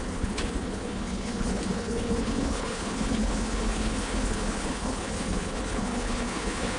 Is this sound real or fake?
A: fake